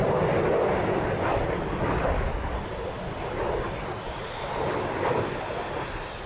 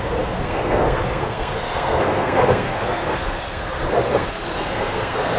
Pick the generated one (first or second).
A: second